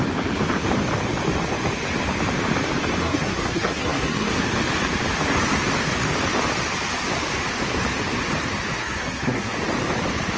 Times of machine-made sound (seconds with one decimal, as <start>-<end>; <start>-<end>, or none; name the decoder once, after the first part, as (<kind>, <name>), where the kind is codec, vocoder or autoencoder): 3.0-4.4 (codec, SNAC); 8.8-9.5

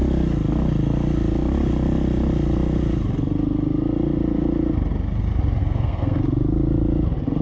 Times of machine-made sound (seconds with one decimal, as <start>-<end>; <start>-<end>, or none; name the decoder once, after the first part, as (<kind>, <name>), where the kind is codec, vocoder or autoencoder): 5.6-6.2 (codec, SNAC)

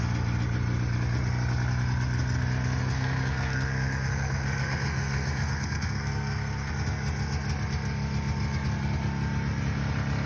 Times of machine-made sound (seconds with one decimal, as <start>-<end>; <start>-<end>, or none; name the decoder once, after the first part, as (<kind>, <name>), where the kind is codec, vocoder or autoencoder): 2.8-6.7 (codec, SNAC)

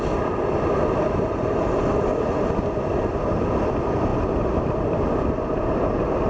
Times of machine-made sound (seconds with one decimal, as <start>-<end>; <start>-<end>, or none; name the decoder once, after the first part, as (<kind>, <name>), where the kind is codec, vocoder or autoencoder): none

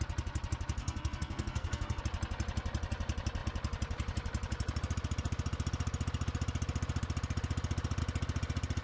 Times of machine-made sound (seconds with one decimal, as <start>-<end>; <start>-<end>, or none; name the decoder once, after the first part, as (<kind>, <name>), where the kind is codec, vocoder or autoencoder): 0.8-2.0 (codec, SNAC)

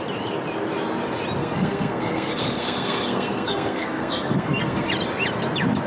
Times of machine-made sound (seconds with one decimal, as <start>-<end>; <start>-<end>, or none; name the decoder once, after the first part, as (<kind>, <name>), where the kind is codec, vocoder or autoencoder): 1.4-4.9 (codec, SNAC)

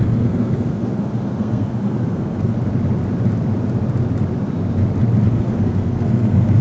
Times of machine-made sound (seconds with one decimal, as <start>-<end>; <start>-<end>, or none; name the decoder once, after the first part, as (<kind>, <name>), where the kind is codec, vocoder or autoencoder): 0.0-2.6 (codec, SNAC); 5.3-6.6

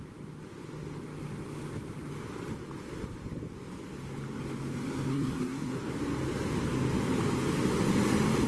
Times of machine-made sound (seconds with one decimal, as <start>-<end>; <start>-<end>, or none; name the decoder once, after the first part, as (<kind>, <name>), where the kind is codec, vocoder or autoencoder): 5.1-5.7 (codec, SNAC)